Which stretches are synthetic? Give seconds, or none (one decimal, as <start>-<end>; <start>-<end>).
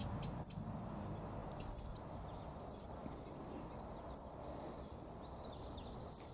none